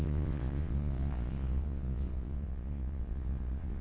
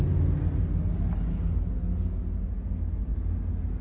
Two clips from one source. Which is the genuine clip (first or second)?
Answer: second